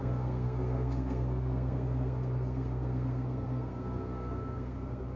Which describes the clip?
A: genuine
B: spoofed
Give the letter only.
B